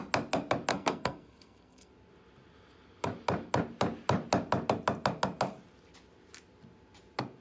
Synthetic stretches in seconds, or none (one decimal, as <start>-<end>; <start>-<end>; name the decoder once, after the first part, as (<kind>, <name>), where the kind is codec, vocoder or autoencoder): 0.7-1.9 (codec, SNAC)